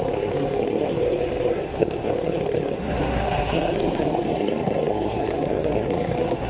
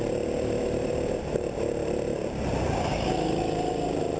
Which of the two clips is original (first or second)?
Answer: second